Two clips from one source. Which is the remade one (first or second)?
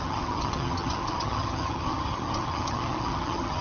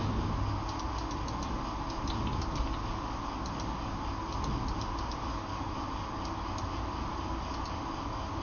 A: first